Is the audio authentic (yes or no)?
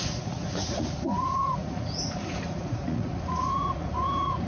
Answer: no